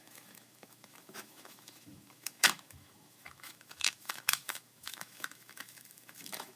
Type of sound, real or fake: fake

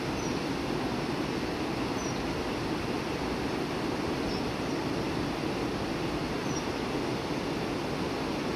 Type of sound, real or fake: real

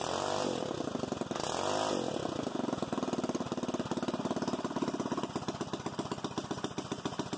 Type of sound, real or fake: real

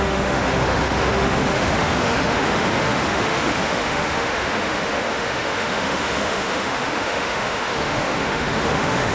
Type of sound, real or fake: fake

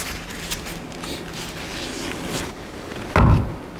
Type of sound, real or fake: real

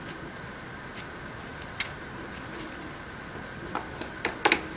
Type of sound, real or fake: real